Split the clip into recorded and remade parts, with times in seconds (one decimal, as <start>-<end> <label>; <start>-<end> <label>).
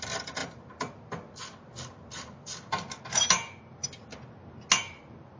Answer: 0.0-4.1 remade; 4.1-4.8 recorded; 4.8-5.4 remade